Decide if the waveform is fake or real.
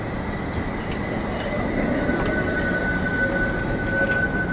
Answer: real